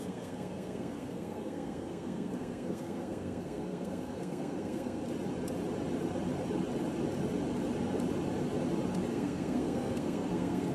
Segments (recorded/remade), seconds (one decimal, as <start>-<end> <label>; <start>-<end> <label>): 0.0-5.0 remade; 5.0-9.1 recorded; 9.1-10.7 remade